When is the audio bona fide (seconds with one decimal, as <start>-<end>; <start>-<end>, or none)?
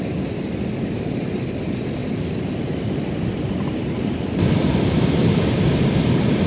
0.0-6.5